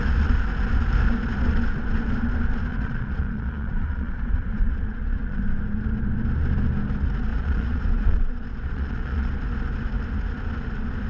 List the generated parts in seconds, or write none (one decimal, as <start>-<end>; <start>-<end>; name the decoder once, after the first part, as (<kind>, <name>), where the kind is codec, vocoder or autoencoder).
2.7-5.4 (vocoder, Vocos); 7.3-9.3